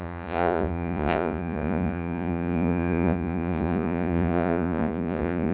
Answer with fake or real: fake